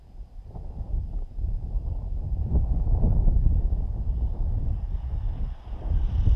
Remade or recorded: remade